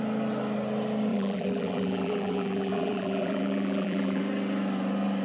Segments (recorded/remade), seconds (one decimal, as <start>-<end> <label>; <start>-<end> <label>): 0.0-1.1 recorded; 1.1-4.2 remade; 4.2-5.2 recorded

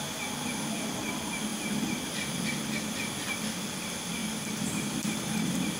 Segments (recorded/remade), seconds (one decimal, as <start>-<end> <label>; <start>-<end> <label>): 0.0-1.5 recorded; 1.5-2.8 remade; 2.8-4.2 recorded; 4.2-5.2 remade; 5.2-5.8 recorded